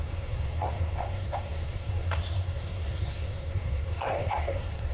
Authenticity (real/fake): fake